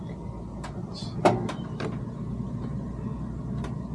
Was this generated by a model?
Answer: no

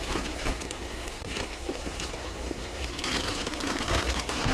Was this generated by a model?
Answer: yes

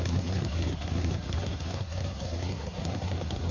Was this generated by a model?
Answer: yes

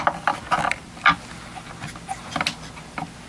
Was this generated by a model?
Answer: no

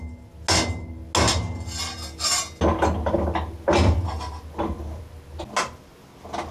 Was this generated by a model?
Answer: no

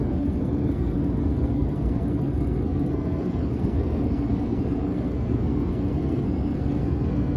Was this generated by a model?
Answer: yes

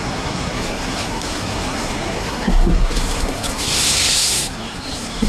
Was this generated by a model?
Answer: yes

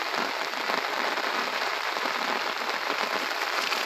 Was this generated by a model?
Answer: no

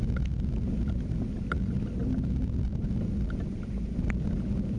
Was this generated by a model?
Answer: no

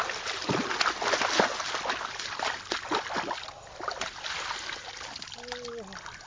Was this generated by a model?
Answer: no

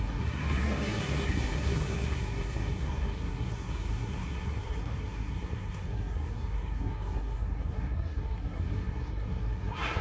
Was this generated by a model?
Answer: yes